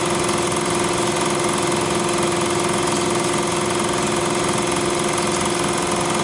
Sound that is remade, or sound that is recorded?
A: recorded